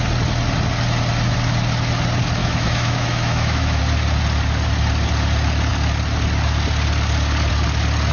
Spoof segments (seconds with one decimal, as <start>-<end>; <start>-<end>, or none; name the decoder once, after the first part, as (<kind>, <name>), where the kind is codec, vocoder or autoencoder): 2.4-3.8 (autoencoder, DAC-VAE)